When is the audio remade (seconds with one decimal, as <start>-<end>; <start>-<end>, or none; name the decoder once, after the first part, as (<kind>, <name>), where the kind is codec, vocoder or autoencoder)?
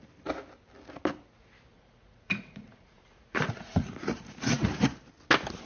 1.7-4.8 (vocoder, Vocos)